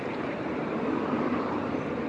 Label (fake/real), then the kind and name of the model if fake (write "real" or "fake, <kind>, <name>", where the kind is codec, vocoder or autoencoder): real